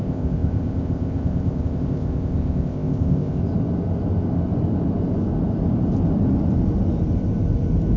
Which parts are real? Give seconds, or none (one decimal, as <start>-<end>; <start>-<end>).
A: 3.4-8.0